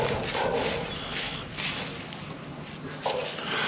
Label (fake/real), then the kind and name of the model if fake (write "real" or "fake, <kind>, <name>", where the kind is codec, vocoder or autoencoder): real